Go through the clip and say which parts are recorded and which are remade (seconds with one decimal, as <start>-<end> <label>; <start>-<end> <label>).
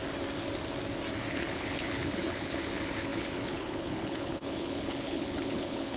0.0-1.3 recorded; 1.3-6.0 remade